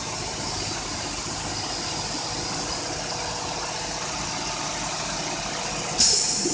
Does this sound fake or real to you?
real